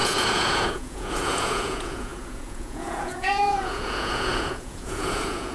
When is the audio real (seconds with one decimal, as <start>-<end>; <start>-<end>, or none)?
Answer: none